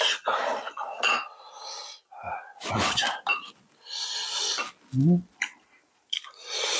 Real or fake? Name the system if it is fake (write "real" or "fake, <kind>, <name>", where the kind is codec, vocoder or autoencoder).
real